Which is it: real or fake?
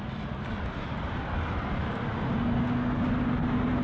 real